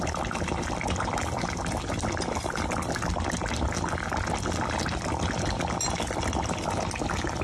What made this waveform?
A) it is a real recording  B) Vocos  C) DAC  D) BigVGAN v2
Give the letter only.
A